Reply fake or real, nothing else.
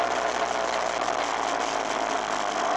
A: real